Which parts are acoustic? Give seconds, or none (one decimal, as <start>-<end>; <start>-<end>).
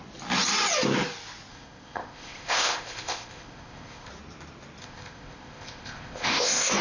0.0-1.5; 4.1-4.8